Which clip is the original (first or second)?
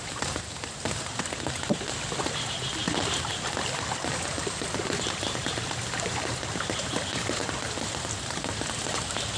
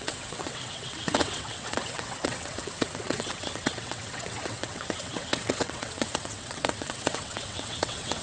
first